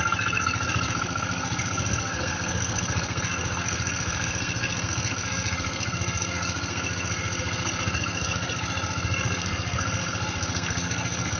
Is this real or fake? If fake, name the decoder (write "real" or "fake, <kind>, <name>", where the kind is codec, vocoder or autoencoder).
fake, codec, SNAC